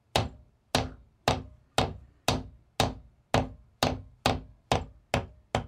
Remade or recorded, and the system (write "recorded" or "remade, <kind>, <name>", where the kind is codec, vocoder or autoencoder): recorded